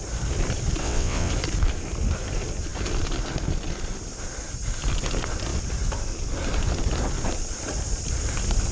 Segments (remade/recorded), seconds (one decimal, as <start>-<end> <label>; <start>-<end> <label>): 0.0-0.8 recorded; 0.8-1.3 remade; 1.3-8.7 recorded